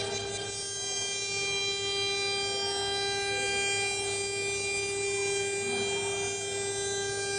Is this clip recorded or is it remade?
recorded